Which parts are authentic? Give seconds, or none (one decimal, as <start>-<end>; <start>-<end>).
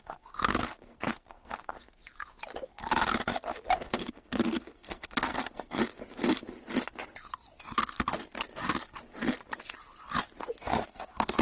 2.0-3.9; 5.8-10.6